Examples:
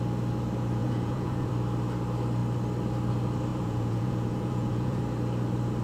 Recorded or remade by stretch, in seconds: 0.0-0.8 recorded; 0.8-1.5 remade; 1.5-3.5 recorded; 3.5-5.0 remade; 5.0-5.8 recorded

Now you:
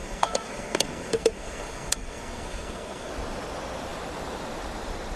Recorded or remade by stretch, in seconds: 0.0-3.1 remade; 3.1-5.2 recorded

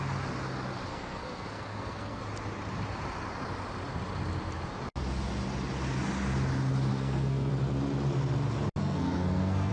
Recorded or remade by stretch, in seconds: 0.0-0.9 recorded; 0.9-2.2 remade; 2.2-6.9 recorded; 6.9-7.5 remade; 7.5-8.8 recorded; 8.8-9.7 remade

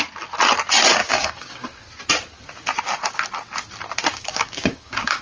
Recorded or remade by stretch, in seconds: 0.0-1.0 recorded; 1.0-1.8 remade; 1.8-4.1 recorded; 4.1-5.2 remade